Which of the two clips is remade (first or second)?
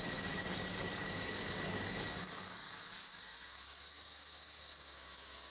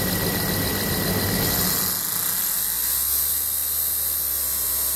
first